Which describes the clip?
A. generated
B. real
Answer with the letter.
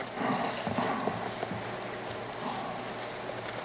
B